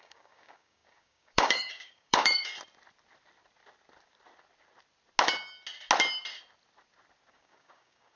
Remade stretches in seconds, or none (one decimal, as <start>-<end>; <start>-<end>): 0.0-2.5; 7.3-8.2